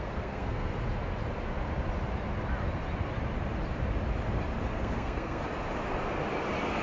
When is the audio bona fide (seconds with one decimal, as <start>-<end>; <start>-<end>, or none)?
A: 0.7-4.8; 5.4-6.8